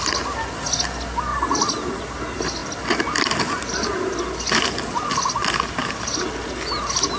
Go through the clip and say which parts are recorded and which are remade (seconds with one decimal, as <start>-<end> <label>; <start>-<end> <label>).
0.0-7.2 recorded